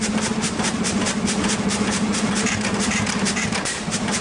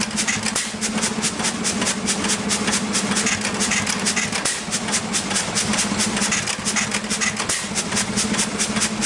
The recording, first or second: second